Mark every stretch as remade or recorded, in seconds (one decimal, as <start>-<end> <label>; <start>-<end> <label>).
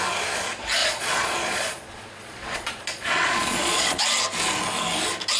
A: 0.0-0.8 recorded; 0.8-4.0 remade; 4.0-5.4 recorded